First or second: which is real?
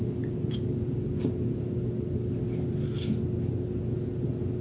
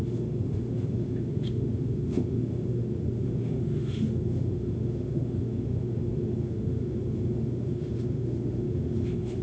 first